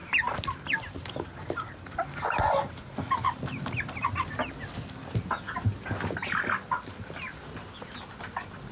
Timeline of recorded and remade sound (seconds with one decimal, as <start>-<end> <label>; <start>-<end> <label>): 0.0-5.1 remade; 5.1-8.7 recorded